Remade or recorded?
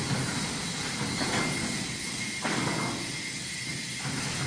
recorded